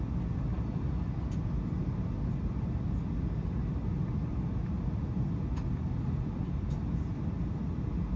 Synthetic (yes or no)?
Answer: no